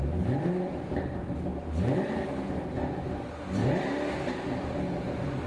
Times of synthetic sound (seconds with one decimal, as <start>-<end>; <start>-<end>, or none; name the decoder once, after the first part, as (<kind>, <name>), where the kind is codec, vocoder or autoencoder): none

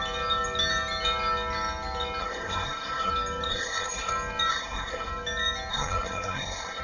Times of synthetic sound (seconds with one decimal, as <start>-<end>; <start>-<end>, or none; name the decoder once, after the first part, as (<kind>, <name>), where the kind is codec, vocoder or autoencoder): 2.2-3.1 (codec, SNAC); 3.5-4.1; 4.5-5.1; 5.7-6.8

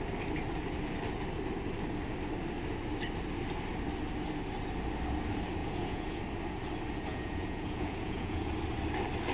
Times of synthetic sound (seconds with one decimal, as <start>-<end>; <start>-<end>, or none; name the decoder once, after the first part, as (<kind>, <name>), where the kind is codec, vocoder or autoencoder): 5.6-6.2 (vocoder, Vocos); 7.1-8.5

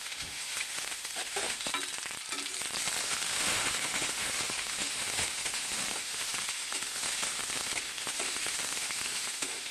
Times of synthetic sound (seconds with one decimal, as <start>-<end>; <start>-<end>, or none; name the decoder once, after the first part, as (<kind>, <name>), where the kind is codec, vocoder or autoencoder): 0.0-1.7 (autoencoder, DAC-VAE); 3.0-9.7

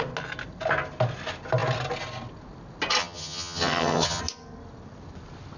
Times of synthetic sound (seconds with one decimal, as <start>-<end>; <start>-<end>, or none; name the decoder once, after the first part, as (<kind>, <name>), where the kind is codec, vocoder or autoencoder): 3.0-4.2 (vocoder, HiFi-GAN)

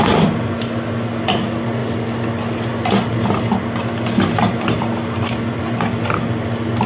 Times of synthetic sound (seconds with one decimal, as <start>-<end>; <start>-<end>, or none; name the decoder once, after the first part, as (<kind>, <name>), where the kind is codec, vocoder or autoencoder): none